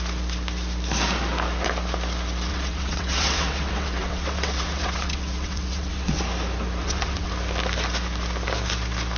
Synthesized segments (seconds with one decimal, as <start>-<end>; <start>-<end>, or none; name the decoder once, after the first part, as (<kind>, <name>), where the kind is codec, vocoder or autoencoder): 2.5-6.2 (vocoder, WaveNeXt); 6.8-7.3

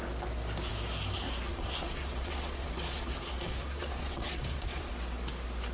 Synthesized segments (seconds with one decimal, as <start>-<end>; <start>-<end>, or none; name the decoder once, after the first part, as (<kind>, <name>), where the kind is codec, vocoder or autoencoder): 1.5-4.9 (vocoder, Vocos)

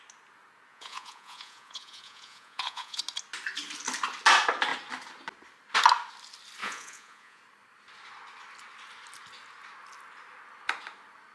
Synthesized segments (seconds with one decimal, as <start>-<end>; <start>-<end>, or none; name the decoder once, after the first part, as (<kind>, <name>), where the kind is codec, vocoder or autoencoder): 0.7-3.0 (vocoder, Vocos); 6.6-7.4